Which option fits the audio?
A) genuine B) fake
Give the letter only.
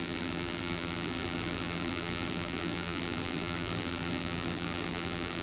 B